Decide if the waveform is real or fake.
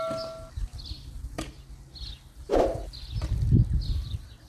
real